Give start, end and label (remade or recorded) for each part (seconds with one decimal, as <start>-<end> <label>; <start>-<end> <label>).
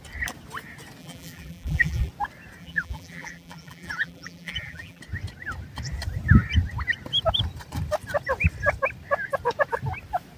0.0-1.0 recorded; 1.0-2.1 remade; 2.1-2.6 recorded; 2.6-5.0 remade; 5.0-10.4 recorded